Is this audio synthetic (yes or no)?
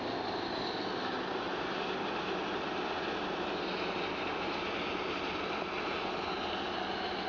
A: no